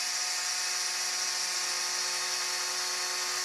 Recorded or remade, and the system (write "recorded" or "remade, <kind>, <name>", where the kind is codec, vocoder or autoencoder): recorded